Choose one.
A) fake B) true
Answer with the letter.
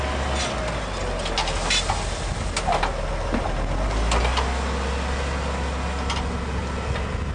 B